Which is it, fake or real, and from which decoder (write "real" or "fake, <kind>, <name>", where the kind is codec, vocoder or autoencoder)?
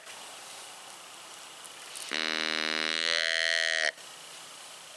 real